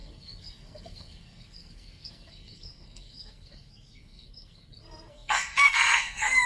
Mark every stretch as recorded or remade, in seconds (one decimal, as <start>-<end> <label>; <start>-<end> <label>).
0.0-6.5 remade